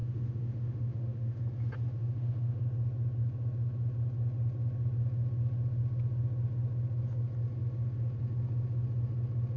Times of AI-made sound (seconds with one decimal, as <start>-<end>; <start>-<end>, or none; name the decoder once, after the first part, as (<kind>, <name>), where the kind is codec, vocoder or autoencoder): 0.0-1.4 (autoencoder, DAC-VAE); 2.0-2.6